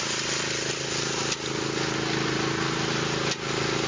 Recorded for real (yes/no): yes